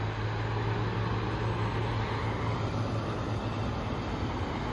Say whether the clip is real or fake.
real